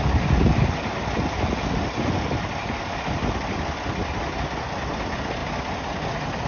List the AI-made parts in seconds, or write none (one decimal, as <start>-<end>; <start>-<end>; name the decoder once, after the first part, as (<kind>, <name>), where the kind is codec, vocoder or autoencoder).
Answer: none